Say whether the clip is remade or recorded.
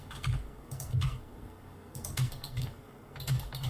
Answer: remade